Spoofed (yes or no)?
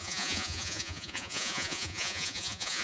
yes